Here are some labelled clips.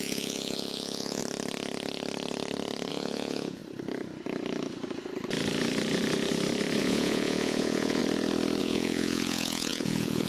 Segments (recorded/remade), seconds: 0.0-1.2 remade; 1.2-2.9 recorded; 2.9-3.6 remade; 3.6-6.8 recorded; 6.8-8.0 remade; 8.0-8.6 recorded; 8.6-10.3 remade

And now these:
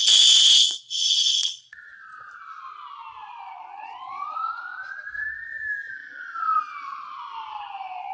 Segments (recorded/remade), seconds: 0.0-2.3 remade; 2.3-3.2 recorded; 3.2-4.6 remade; 4.6-6.0 recorded; 6.0-6.6 remade; 6.6-8.1 recorded

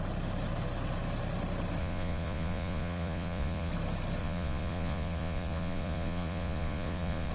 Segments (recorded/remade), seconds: 0.0-1.8 recorded; 1.8-3.7 remade; 3.7-4.2 recorded; 4.2-7.3 remade

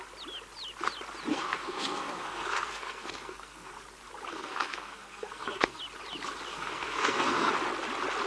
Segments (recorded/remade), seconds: 0.0-1.3 recorded; 1.3-3.7 remade; 3.7-4.3 recorded; 4.3-5.8 remade; 5.8-6.5 recorded; 6.5-7.5 remade; 7.5-8.3 recorded

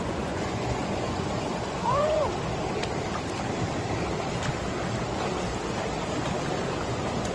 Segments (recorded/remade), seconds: 0.0-2.3 remade; 2.3-6.7 recorded; 6.7-7.3 remade